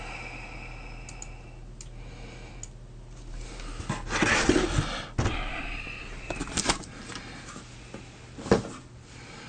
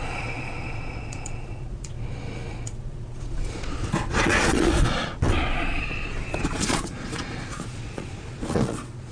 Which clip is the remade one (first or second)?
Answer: second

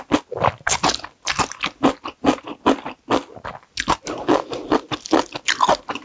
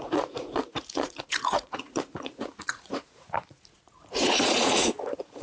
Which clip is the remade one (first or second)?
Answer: second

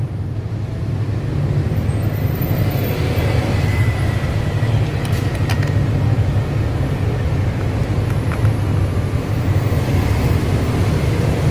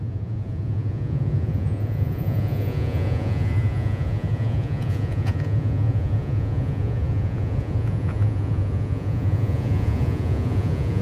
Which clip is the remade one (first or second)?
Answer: second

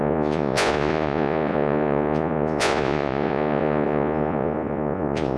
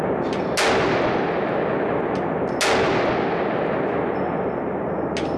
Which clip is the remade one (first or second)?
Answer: first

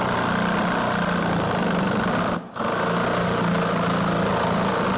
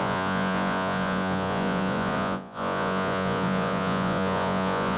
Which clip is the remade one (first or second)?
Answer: second